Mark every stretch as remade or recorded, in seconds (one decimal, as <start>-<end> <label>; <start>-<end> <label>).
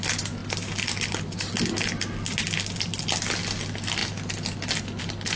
0.0-5.4 recorded